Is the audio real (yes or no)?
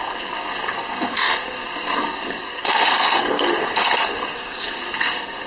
no